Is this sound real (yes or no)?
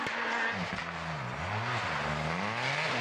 yes